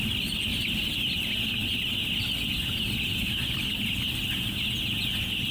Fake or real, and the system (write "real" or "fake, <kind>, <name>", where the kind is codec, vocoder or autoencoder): real